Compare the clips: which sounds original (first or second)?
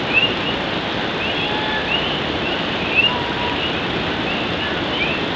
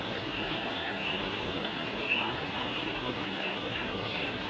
first